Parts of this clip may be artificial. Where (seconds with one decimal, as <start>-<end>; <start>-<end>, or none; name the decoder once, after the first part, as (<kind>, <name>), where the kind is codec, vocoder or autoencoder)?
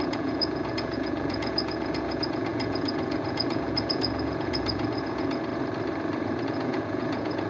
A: 0.0-5.5 (vocoder, Vocos); 6.4-7.5